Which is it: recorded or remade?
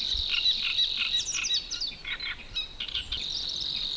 recorded